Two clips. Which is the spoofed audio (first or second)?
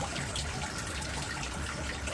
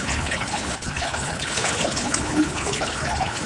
second